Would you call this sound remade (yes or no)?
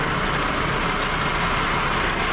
no